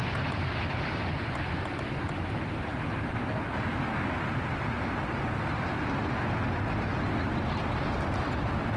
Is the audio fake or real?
real